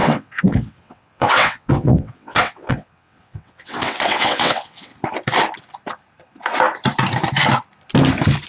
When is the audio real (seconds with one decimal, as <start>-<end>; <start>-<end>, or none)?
4.9-8.5